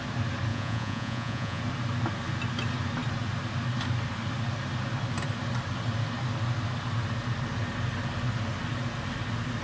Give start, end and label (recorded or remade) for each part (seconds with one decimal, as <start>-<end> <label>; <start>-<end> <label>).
0.0-0.5 recorded; 0.5-1.6 remade; 1.6-9.6 recorded